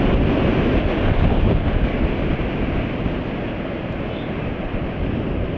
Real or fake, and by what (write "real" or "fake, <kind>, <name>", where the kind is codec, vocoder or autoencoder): real